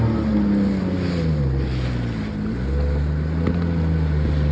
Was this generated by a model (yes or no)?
no